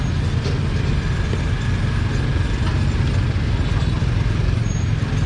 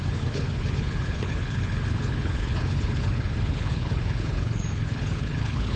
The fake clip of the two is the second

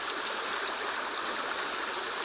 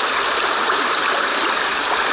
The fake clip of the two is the first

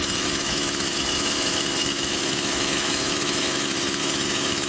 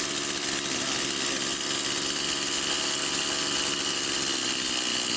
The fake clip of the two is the first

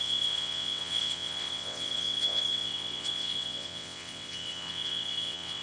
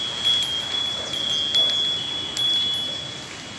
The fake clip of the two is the first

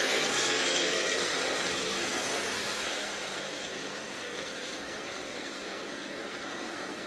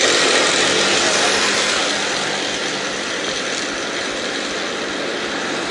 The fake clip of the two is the first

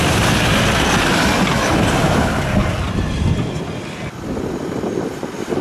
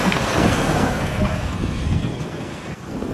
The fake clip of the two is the second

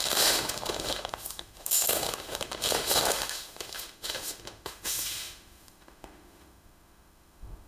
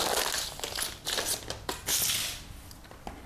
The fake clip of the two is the first